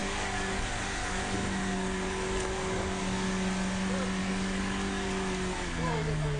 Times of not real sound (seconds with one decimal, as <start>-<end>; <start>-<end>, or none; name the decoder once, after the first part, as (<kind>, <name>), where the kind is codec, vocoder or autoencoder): 0.0-3.0 (codec, DAC); 4.2-6.4